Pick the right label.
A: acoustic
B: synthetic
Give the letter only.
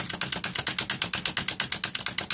A